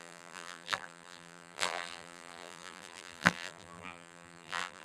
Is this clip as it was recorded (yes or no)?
no